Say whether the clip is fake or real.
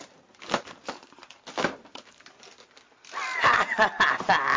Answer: real